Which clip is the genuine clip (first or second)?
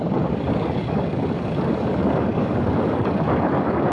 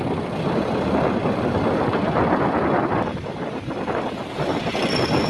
second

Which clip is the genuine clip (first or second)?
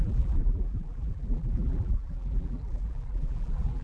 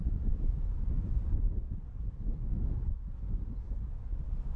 second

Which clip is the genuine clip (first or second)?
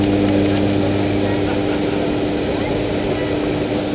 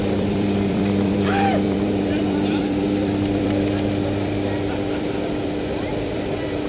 first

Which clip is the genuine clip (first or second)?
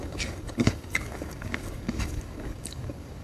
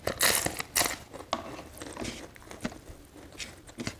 second